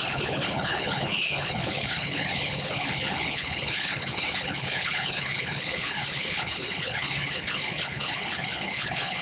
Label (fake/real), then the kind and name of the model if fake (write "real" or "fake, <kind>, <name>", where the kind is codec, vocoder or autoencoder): fake, codec, HILCodec